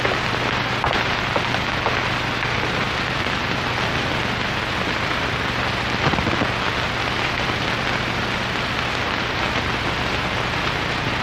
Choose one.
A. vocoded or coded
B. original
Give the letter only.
B